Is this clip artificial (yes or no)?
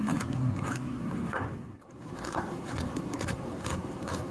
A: yes